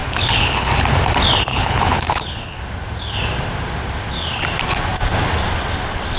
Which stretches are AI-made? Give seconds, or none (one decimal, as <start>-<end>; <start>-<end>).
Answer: 0.0-0.7; 1.5-2.6